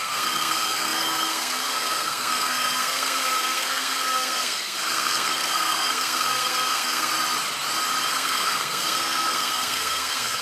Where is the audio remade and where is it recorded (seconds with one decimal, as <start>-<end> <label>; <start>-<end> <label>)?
0.0-7.1 remade; 7.1-8.1 recorded; 8.1-10.4 remade